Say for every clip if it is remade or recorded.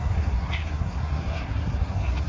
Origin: remade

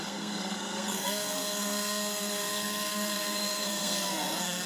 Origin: remade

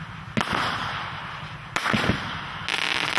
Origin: recorded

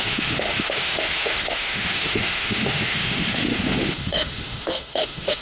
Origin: remade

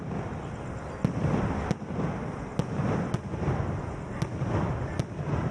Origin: recorded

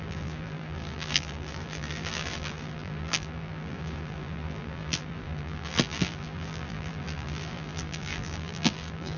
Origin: remade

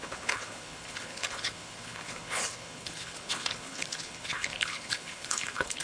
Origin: remade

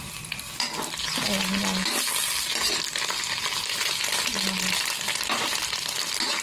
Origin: recorded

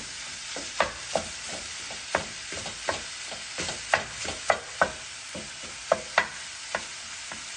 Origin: recorded